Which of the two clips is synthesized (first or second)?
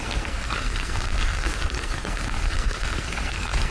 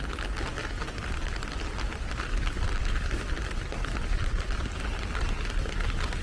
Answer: first